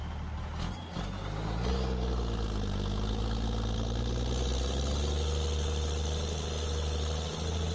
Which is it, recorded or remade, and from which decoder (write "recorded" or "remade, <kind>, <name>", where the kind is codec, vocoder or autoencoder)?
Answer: recorded